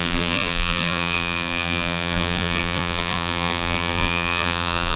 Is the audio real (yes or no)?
no